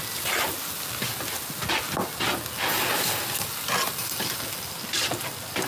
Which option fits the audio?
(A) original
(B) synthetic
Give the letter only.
A